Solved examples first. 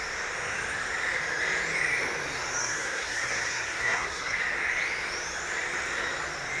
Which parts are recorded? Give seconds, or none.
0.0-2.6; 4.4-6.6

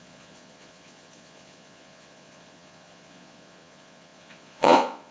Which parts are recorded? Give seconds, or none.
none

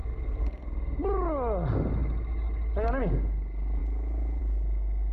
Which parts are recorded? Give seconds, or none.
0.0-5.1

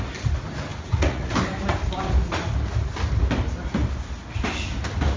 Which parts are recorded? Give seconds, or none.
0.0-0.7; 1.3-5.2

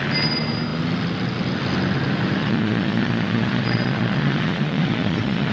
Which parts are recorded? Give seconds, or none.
0.0-2.4

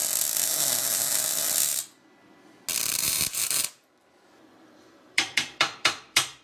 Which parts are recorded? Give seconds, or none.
0.0-3.0